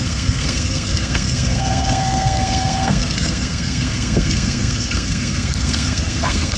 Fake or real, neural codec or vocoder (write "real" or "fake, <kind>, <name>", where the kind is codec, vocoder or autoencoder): fake, codec, SNAC